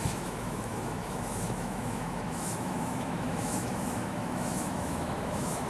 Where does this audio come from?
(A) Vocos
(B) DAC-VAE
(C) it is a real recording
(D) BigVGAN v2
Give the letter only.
B